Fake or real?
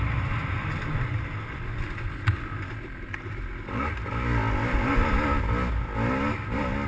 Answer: real